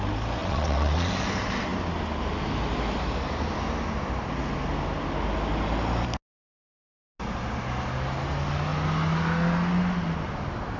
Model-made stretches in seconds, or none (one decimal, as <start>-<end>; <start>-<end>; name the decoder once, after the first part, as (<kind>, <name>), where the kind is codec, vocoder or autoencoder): 0.4-1.1 (vocoder, WaveNeXt)